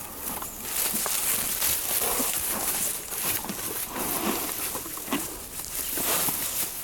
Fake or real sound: real